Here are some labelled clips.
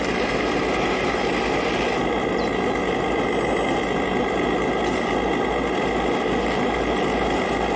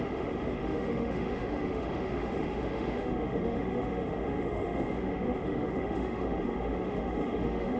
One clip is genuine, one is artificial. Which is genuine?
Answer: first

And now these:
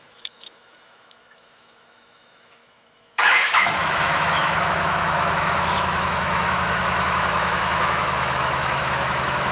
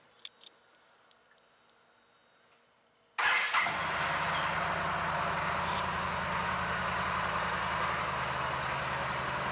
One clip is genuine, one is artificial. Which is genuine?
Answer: second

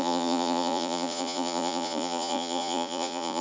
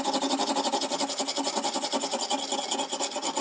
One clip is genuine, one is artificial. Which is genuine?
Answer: second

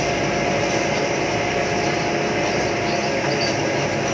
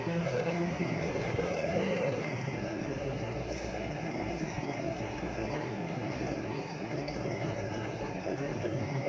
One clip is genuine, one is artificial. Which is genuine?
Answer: first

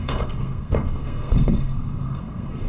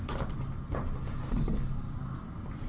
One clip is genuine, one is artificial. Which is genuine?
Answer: second